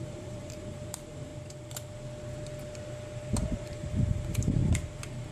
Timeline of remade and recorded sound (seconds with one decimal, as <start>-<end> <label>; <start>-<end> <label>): 0.0-1.3 remade; 1.3-3.2 recorded; 3.2-4.6 remade; 4.6-5.3 recorded